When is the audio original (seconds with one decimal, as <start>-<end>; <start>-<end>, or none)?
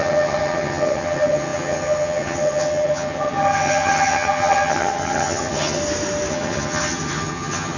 5.8-6.3